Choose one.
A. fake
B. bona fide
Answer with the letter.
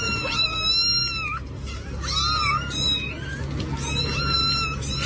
B